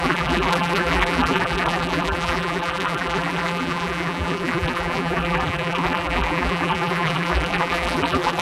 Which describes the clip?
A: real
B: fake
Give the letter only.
B